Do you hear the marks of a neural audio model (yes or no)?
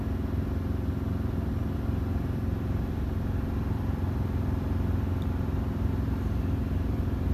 no